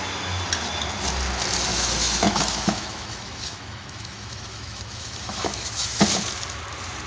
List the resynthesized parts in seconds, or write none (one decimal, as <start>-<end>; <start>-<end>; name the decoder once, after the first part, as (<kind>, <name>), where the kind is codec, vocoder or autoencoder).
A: 1.7-6.0 (autoencoder, DAC-VAE)

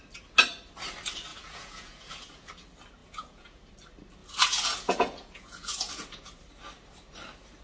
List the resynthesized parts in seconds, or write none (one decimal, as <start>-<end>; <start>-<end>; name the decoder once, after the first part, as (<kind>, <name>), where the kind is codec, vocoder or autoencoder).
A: 1.3-2.5 (vocoder, Vocos); 3.0-3.7; 4.2-6.4

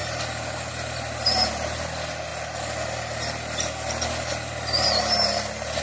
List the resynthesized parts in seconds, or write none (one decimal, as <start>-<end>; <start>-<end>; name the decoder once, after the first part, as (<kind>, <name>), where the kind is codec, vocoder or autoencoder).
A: none